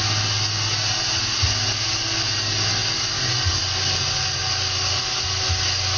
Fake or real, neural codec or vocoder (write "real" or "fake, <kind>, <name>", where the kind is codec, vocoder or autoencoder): real